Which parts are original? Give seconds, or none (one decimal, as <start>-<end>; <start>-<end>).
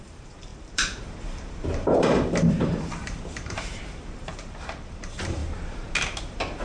5.4-6.6